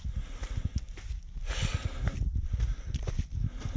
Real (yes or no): yes